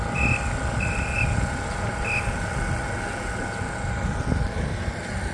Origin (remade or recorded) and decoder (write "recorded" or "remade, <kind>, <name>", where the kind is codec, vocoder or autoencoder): recorded